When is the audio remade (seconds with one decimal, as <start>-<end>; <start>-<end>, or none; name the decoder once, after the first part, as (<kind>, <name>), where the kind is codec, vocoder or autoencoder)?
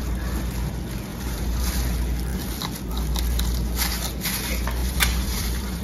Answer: 1.1-1.7 (vocoder, BigVGAN v2); 4.8-5.8